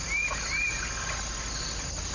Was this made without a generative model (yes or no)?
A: yes